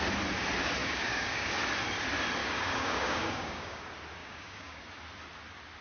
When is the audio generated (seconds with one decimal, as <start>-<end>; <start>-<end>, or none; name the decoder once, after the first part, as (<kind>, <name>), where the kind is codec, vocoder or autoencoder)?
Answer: 0.8-1.5 (codec, DAC); 2.4-3.8; 4.2-4.8